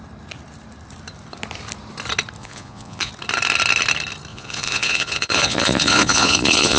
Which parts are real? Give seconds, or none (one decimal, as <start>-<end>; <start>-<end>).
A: 0.0-2.4; 3.1-4.3